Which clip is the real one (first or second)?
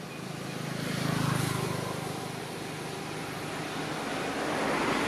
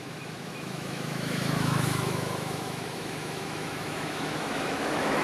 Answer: first